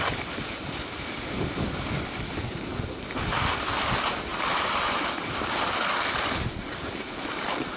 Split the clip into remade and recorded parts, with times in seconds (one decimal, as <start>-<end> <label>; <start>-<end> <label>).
0.0-7.8 recorded